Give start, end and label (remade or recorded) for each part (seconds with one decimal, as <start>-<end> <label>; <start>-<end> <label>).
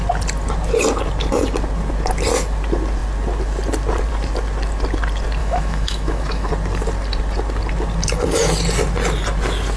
0.0-5.4 recorded; 5.4-6.5 remade; 6.5-9.8 recorded